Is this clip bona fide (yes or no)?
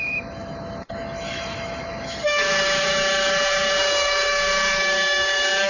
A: no